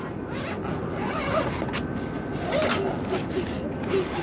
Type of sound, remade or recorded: recorded